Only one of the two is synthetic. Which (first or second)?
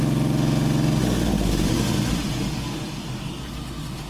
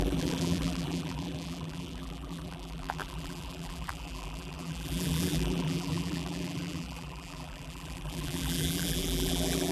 second